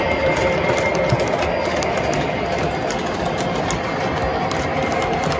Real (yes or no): yes